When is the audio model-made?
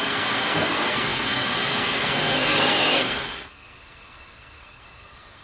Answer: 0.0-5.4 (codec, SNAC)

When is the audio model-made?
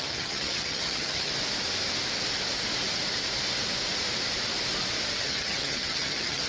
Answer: 0.0-1.3 (vocoder, HiFi-GAN); 5.2-6.5